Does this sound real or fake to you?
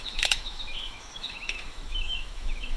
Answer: fake